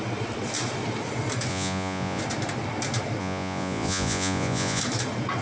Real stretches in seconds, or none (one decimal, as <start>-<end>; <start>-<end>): 0.0-1.5; 2.2-3.2; 4.8-5.4